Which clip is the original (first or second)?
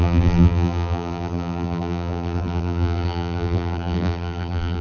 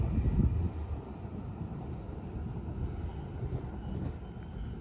second